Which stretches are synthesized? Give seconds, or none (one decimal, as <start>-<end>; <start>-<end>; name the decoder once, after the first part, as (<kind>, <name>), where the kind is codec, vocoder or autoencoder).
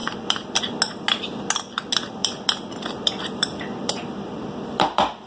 0.0-0.6 (vocoder, BigVGAN v2); 2.2-5.3